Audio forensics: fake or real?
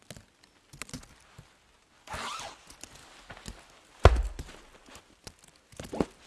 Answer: real